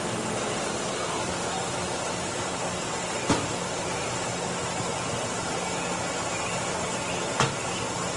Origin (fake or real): real